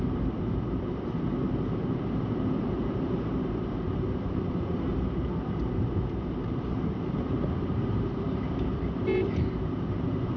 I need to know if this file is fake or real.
fake